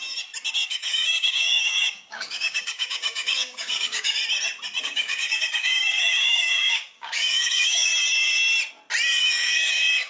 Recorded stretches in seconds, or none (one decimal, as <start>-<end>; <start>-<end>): 0.0-0.6; 4.2-4.8; 7.9-9.2